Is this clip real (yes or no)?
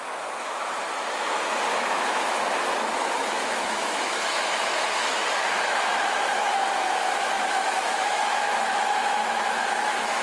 no